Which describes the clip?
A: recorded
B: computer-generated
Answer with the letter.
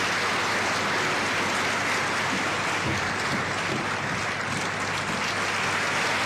A